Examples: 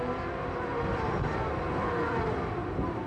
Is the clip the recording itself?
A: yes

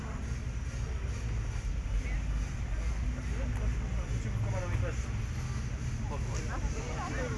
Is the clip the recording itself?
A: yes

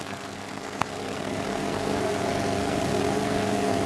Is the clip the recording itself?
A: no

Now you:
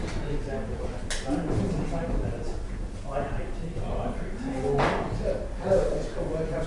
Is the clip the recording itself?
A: yes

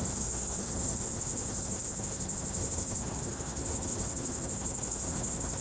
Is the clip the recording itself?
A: no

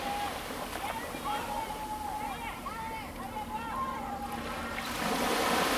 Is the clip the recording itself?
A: yes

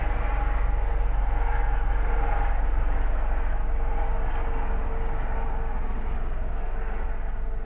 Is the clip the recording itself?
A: yes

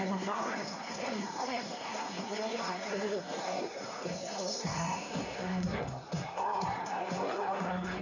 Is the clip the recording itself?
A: no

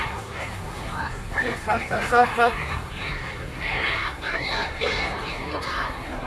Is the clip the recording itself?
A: no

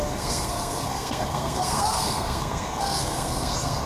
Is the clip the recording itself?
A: no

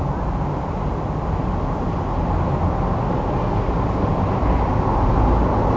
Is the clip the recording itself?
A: yes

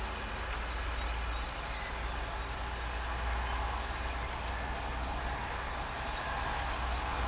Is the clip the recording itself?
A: yes